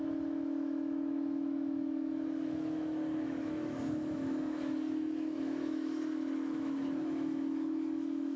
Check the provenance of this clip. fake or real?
fake